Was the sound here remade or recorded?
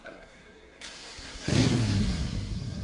remade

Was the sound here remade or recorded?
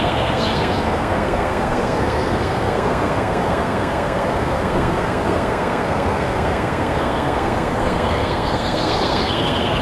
remade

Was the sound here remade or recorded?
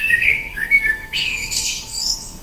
remade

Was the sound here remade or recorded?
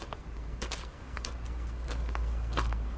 remade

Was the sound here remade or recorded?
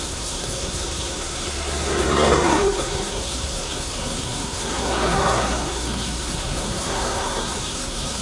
remade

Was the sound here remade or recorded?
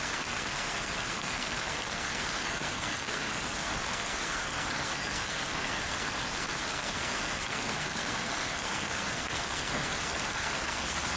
remade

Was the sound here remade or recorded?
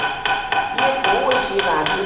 recorded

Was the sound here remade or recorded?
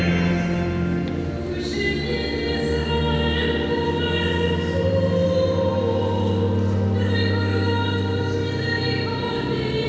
recorded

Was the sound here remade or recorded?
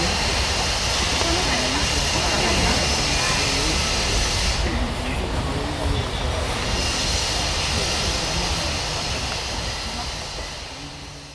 recorded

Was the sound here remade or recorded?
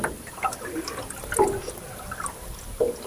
recorded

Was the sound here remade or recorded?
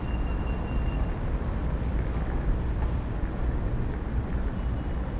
recorded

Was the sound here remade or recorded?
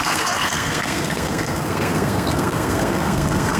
remade